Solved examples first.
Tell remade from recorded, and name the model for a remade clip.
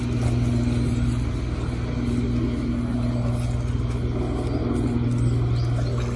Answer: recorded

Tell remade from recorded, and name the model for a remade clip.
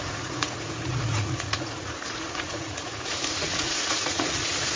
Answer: remade, vocoder, Vocos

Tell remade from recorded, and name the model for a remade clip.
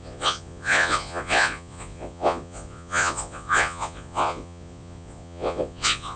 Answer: remade, vocoder, Vocos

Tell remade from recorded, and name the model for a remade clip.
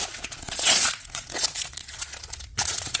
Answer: remade, vocoder, Vocos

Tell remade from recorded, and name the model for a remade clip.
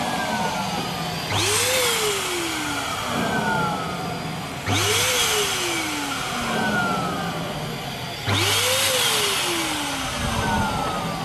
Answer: recorded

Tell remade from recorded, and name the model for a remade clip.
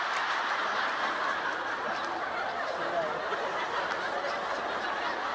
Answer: recorded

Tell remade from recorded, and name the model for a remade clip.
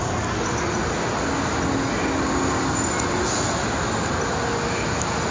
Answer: recorded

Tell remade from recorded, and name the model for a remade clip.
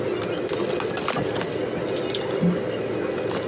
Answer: recorded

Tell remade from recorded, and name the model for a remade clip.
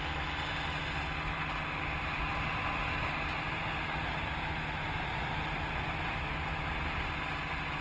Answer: recorded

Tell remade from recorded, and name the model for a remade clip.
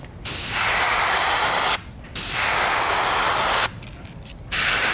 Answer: recorded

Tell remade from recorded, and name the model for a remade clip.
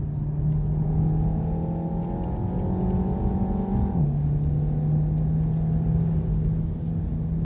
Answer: recorded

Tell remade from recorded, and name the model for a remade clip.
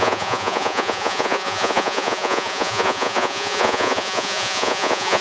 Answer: remade, vocoder, Vocos